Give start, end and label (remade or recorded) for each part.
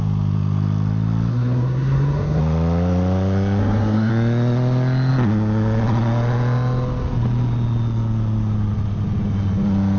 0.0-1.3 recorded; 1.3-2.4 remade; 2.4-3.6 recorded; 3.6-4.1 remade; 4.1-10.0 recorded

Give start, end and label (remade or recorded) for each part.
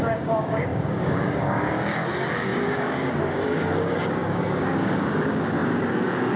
0.0-6.4 remade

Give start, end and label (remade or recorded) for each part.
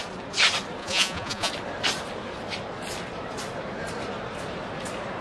0.0-0.8 recorded; 0.8-1.5 remade; 1.5-5.2 recorded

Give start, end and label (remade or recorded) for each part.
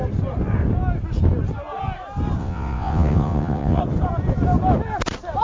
0.0-2.4 recorded; 2.4-3.8 remade; 3.8-5.4 recorded